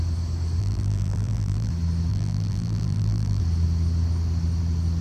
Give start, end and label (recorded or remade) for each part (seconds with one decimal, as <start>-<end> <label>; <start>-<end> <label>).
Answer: 0.0-0.6 recorded; 0.6-1.7 remade; 1.7-2.1 recorded; 2.1-3.4 remade; 3.4-5.0 recorded